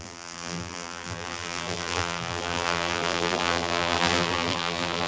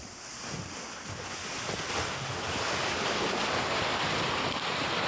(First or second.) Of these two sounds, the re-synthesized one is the first